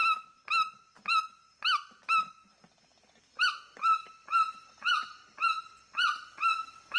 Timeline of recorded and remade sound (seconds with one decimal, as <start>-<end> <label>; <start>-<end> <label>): 0.0-2.9 recorded; 2.9-5.6 remade; 5.6-7.0 recorded